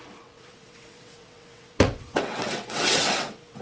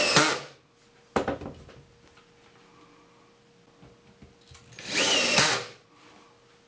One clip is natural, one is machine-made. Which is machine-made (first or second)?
first